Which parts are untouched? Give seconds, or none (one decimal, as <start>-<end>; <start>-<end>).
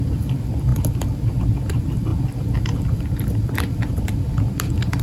0.0-5.0